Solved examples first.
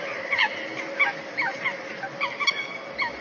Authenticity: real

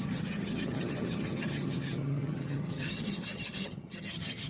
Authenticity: fake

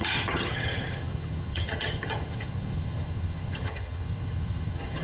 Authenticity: fake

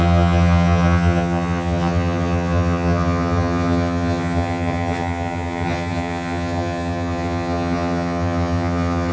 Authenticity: fake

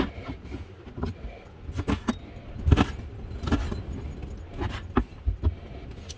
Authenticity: real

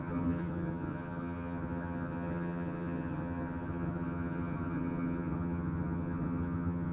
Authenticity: fake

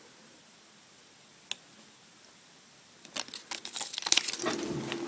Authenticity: real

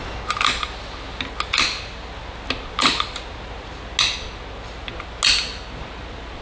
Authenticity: real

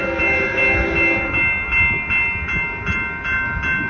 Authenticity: real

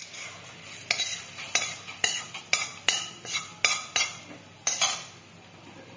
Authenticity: real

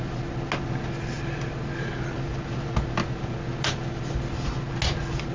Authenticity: real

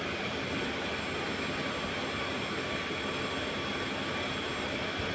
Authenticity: real